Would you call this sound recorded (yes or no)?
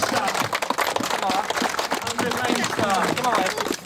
yes